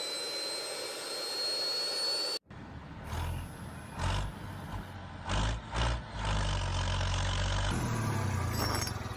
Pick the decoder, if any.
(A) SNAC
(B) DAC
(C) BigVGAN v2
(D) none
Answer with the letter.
D